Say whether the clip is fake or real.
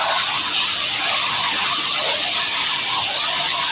real